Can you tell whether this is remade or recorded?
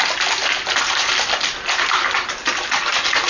recorded